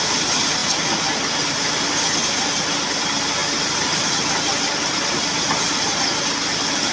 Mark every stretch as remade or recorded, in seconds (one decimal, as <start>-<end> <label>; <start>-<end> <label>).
0.0-3.4 recorded; 3.4-5.7 remade; 5.7-6.9 recorded